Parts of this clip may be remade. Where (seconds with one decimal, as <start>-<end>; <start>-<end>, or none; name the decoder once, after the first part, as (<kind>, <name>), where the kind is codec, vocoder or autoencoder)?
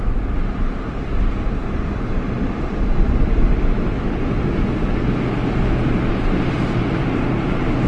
0.0-1.6 (vocoder, BigVGAN v2); 6.1-7.9